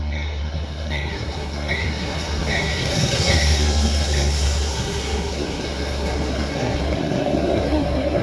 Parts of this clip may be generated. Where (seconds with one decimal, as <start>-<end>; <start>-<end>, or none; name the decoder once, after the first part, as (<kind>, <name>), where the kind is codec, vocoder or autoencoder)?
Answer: 0.0-8.2 (codec, SNAC)